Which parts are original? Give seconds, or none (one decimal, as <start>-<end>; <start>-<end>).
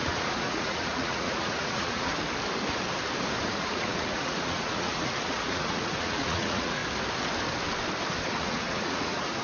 2.1-3.5; 6.8-8.3